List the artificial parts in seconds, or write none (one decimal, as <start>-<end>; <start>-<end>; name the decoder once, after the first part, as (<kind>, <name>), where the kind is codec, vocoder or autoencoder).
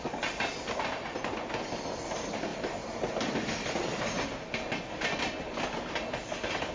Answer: none